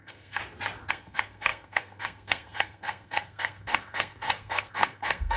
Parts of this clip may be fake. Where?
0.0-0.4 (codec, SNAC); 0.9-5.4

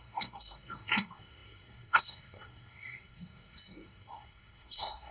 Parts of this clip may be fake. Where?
0.0-5.1 (codec, SNAC)

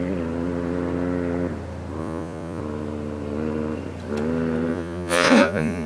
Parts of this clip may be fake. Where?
2.0-2.6 (vocoder, Vocos); 4.7-5.9

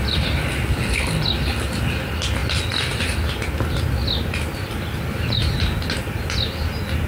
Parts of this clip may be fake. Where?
none

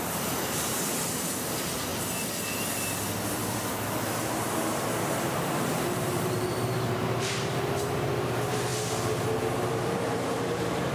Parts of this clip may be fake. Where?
0.0-1.9 (vocoder, BigVGAN v2); 4.2-8.7; 9.7-10.9